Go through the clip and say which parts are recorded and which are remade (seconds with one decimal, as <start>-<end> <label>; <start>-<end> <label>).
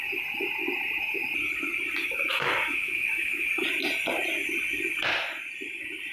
0.0-2.0 recorded; 2.0-3.5 remade; 3.5-6.1 recorded